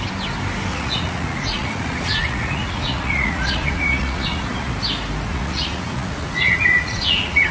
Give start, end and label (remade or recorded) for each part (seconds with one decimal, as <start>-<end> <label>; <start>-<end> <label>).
0.0-0.7 recorded; 0.7-4.7 remade; 4.7-5.3 recorded; 5.3-7.5 remade